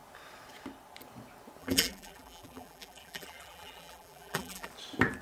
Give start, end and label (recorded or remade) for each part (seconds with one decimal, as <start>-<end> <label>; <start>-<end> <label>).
0.0-1.6 recorded; 1.6-4.7 remade; 4.7-5.2 recorded